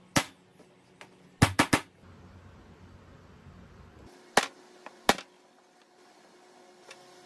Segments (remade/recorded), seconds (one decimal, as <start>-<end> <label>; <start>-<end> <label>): 0.0-7.3 recorded